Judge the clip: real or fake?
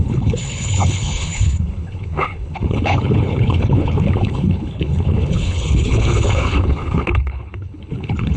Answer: fake